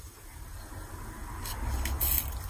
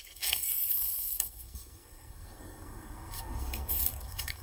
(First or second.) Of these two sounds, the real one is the first